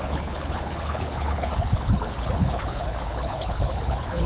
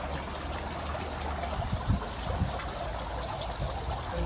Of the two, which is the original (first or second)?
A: second